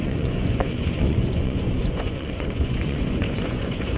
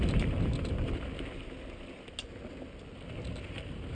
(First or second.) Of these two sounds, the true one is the second